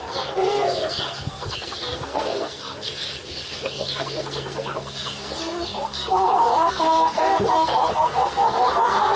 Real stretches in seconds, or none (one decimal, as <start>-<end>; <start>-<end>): none